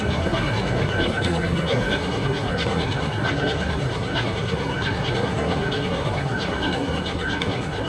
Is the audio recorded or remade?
remade